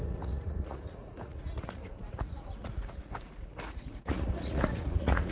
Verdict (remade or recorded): remade